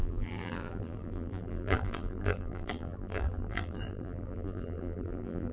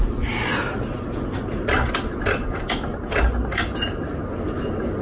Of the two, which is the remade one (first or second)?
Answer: first